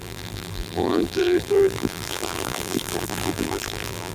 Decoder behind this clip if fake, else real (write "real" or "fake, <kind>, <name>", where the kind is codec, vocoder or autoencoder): fake, vocoder, BigVGAN v2